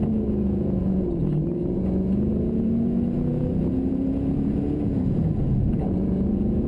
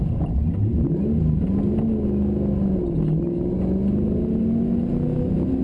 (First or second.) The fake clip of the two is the first